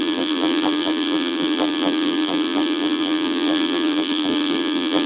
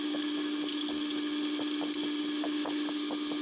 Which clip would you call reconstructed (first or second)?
first